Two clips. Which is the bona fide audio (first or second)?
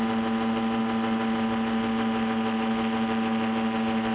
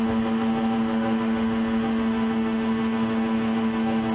first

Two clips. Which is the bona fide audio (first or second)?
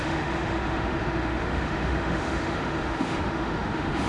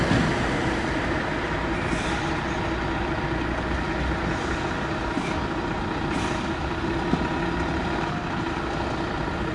second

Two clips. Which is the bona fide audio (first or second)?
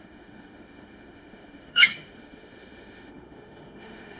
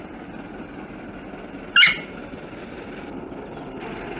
second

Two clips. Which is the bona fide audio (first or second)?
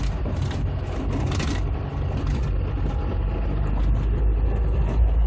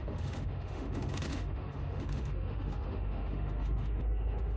first